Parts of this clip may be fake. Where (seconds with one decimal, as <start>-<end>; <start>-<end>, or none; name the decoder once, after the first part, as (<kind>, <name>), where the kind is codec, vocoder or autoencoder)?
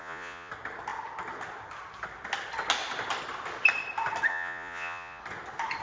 0.0-0.5 (vocoder, Vocos); 4.3-5.2